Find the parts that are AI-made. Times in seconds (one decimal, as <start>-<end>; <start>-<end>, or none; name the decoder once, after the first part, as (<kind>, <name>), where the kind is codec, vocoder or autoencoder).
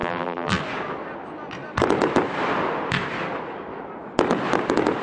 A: 0.0-0.6 (vocoder, BigVGAN v2)